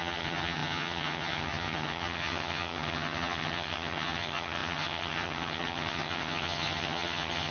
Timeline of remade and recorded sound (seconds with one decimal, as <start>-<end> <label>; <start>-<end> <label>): 0.0-7.5 remade